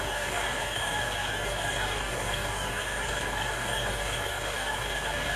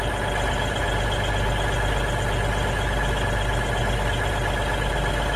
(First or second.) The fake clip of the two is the first